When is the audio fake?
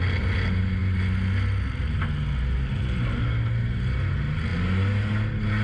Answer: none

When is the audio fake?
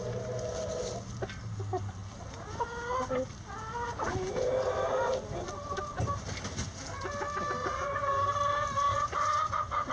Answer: 7.6-8.1 (vocoder, Vocos); 8.9-9.9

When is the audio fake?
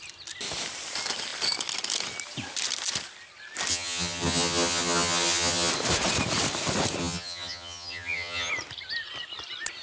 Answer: 3.7-5.7 (vocoder, HiFi-GAN); 7.0-8.5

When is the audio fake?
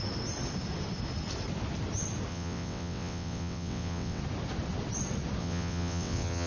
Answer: 2.3-4.2 (vocoder, WaveNeXt); 5.4-6.5